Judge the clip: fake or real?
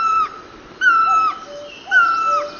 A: real